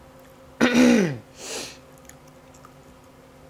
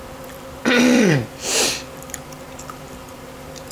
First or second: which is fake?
second